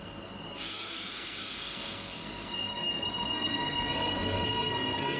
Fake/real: fake